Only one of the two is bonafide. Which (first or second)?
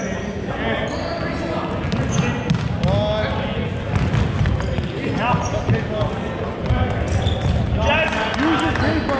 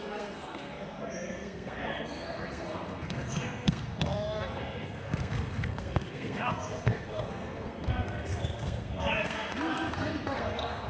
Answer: first